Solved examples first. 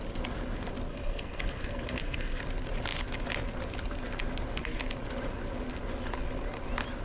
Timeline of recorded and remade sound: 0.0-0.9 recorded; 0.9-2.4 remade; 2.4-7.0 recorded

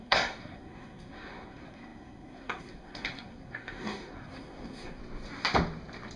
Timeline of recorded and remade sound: 0.0-5.0 remade; 5.0-6.2 recorded

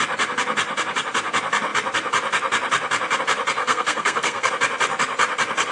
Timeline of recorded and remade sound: 0.0-3.6 recorded; 3.6-4.5 remade; 4.5-5.7 recorded

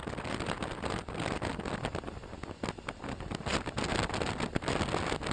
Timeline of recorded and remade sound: 0.0-5.3 recorded

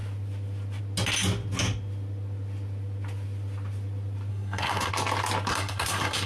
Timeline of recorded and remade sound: 0.0-4.3 recorded; 4.3-4.9 remade; 4.9-5.5 recorded; 5.5-6.3 remade

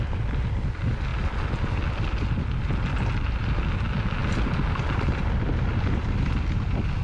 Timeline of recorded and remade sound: 0.0-7.0 recorded